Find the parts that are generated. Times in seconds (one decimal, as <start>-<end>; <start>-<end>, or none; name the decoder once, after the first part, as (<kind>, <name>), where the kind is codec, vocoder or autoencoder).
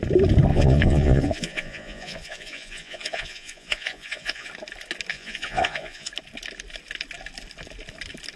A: 0.5-4.5 (vocoder, Vocos); 5.1-6.1